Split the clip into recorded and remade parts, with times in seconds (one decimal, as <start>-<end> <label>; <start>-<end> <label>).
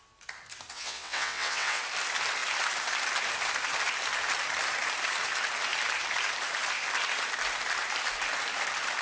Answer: 0.0-0.7 recorded; 0.7-1.8 remade; 1.8-9.0 recorded